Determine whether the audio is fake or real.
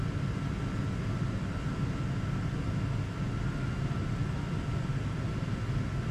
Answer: real